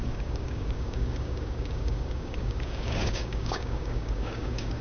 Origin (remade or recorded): remade